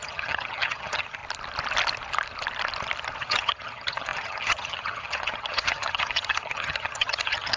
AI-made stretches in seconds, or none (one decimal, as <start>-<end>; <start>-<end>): 0.0-1.2; 3.2-7.6